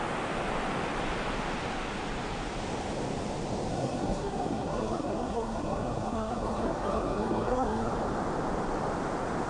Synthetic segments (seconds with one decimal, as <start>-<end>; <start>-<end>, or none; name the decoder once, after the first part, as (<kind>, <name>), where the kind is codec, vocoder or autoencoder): 3.7-7.9 (codec, SNAC)

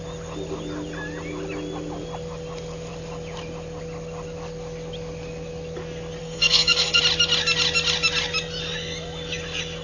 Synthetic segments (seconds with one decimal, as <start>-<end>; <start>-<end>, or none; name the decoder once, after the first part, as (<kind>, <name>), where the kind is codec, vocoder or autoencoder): 6.2-7.0 (codec, SNAC)

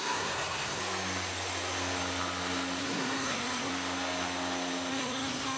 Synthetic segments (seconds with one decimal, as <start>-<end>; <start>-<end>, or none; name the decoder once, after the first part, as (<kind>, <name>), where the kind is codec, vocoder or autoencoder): 0.0-0.8 (codec, SNAC); 2.8-3.7; 4.9-5.6

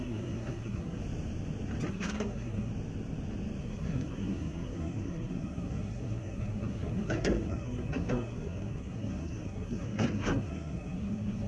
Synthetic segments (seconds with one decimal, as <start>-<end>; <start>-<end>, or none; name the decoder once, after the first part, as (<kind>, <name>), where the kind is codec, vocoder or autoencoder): 0.0-1.0 (codec, SNAC); 1.9-2.7; 3.6-11.5